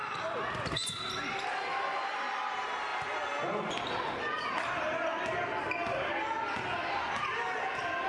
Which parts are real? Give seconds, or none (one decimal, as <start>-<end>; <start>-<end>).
0.0-8.1